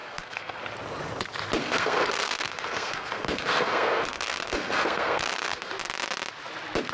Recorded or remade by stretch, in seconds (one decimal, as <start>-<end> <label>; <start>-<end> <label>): 0.0-0.6 remade; 0.6-1.6 recorded; 1.6-5.7 remade; 5.7-6.9 recorded